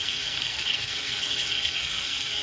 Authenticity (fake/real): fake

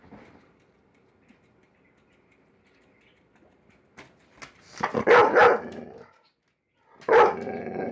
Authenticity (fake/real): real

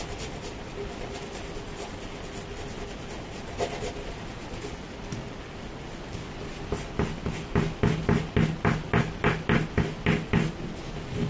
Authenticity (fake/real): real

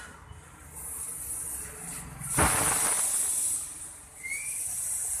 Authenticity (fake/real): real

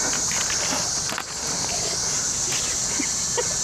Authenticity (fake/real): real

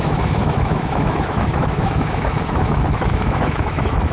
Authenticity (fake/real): fake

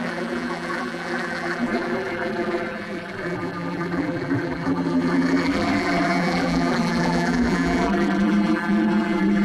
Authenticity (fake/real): fake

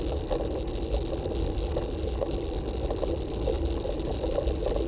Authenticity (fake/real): real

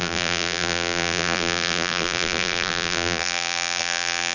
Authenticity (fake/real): fake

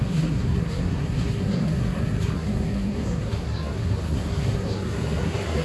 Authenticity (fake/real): fake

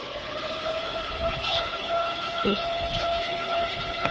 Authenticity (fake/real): fake